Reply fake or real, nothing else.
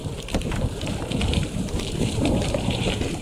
fake